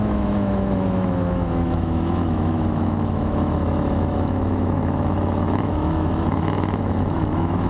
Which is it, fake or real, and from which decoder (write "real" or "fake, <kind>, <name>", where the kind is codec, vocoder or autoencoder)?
fake, autoencoder, DAC-VAE